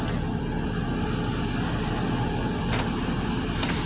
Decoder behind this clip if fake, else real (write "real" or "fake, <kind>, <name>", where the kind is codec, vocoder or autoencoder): real